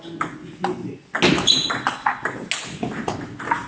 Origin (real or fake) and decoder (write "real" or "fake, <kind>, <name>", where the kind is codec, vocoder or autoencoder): real